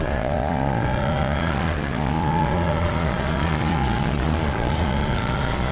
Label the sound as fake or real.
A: fake